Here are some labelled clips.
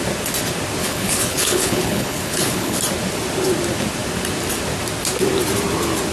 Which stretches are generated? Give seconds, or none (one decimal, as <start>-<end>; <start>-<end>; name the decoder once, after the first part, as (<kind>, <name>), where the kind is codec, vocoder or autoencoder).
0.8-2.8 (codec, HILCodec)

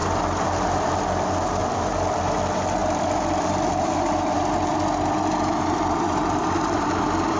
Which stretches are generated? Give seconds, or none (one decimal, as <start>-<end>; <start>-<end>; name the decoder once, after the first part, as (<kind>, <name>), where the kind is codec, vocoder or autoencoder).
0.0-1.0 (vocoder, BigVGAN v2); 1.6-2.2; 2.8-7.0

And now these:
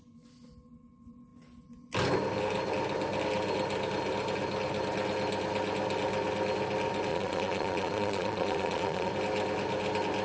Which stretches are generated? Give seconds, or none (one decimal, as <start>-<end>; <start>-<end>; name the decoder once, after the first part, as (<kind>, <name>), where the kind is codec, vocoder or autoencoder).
7.1-9.1 (vocoder, Vocos)

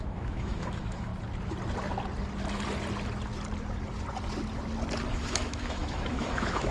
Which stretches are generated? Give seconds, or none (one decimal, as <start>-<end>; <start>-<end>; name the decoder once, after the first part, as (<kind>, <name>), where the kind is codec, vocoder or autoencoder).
0.0-1.1 (autoencoder, DAC-VAE); 5.1-6.7

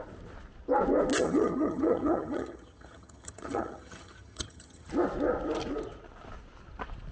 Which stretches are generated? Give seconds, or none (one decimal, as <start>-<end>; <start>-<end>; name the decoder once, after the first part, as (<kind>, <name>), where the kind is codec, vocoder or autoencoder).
1.2-4.9 (vocoder, HiFi-GAN)

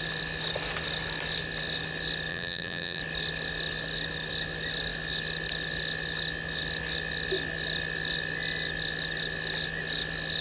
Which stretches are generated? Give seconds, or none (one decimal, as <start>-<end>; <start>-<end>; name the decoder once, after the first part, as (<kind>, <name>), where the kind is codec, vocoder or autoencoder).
2.3-3.0 (vocoder, BigVGAN v2)

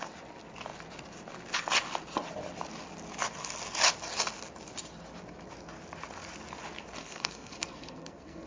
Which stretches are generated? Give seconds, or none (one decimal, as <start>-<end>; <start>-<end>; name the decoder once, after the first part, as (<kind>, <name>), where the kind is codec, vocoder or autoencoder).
7.0-8.5 (codec, SNAC)